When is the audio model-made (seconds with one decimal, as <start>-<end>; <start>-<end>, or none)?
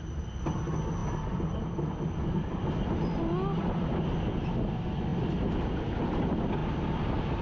none